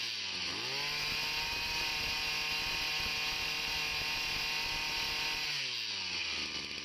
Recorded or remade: recorded